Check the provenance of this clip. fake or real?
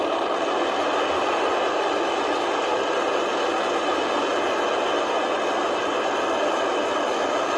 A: real